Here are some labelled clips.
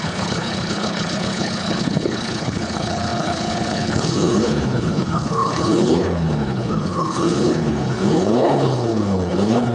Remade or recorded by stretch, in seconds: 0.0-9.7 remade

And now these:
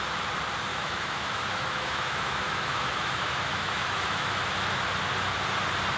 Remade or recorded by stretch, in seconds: 0.0-0.7 recorded; 0.7-4.3 remade; 4.3-6.0 recorded

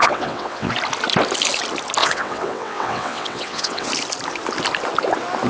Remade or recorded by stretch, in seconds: 0.0-0.7 remade; 0.7-2.0 recorded; 2.0-3.9 remade; 3.9-5.5 recorded

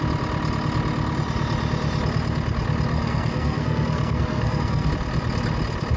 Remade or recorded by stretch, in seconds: 0.0-2.9 recorded; 2.9-4.9 remade; 4.9-6.0 recorded

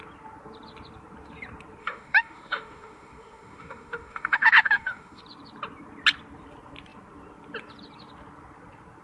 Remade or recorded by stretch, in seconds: 0.0-1.8 recorded; 1.8-5.2 remade; 5.2-9.0 recorded

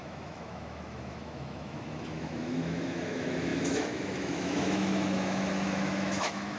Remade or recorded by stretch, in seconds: 0.0-6.6 remade

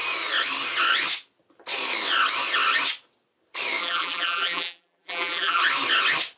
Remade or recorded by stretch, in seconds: 0.0-3.8 recorded; 3.8-5.6 remade; 5.6-6.4 recorded